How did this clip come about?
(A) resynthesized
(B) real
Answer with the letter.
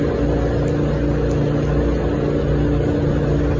B